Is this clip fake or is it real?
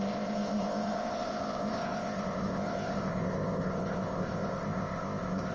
fake